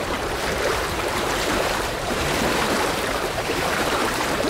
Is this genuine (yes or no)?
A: no